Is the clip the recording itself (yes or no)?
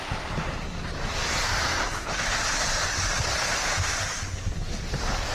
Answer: yes